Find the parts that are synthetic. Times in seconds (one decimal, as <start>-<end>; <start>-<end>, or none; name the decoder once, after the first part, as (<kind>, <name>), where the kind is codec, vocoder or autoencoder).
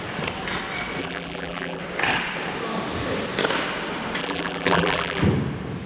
1.0-1.8 (vocoder, BigVGAN v2); 4.2-5.2